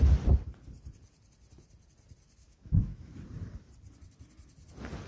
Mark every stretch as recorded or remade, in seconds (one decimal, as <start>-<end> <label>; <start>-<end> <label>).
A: 0.0-2.4 recorded; 2.4-3.1 remade; 3.1-5.1 recorded